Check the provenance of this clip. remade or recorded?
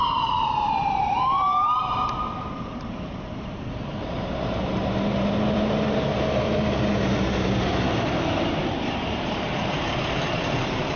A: remade